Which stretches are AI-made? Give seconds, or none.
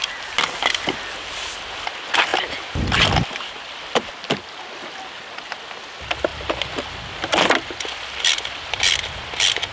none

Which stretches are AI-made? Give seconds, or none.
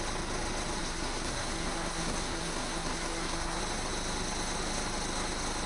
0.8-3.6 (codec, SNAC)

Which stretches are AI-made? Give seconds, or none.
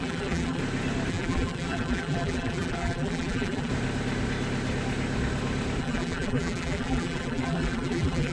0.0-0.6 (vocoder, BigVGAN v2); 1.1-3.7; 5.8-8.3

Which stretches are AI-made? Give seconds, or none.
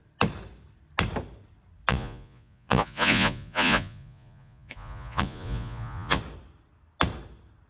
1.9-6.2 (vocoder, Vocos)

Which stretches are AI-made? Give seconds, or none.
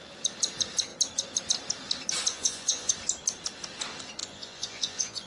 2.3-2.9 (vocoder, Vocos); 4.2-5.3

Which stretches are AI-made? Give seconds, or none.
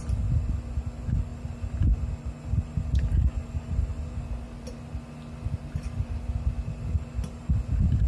none